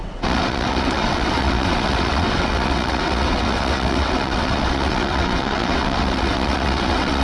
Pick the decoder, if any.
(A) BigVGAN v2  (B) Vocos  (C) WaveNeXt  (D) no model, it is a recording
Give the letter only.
C